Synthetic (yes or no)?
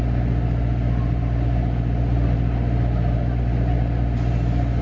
no